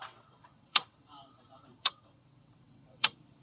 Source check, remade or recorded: remade